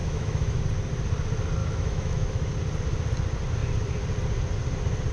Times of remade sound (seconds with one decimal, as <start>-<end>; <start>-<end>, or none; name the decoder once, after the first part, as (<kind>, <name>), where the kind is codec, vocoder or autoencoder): 0.0-0.6 (autoencoder, DAC-VAE); 1.6-2.5